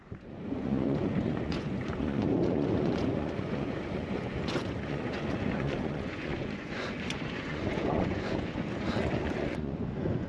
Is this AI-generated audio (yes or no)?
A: yes